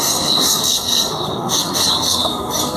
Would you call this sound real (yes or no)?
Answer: no